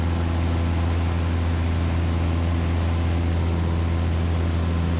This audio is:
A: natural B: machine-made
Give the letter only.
A